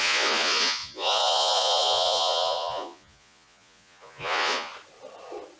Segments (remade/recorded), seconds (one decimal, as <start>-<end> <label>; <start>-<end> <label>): 0.0-4.7 remade; 4.7-5.6 recorded